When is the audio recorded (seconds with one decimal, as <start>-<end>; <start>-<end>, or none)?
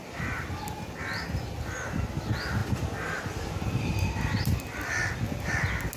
1.0-2.6; 5.5-6.0